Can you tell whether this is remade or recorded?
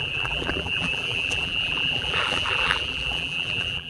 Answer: remade